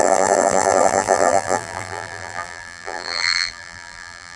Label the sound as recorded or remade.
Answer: remade